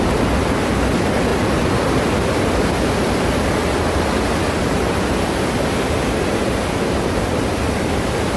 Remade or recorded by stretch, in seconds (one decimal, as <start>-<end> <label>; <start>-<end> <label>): 0.0-8.4 recorded